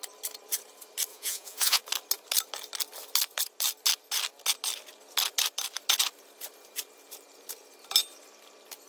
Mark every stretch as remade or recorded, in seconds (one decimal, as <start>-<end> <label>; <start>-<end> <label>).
0.0-1.1 recorded; 1.1-1.8 remade; 1.8-8.9 recorded